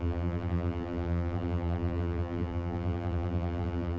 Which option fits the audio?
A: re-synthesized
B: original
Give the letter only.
A